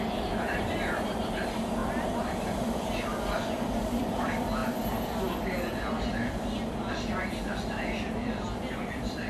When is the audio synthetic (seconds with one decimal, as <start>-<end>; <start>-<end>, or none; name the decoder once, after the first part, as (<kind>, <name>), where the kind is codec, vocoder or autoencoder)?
0.0-4.6 (vocoder, BigVGAN v2); 6.9-9.3